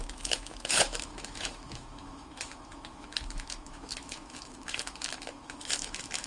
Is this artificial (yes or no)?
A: yes